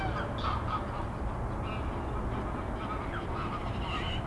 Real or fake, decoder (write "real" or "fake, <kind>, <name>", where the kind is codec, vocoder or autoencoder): real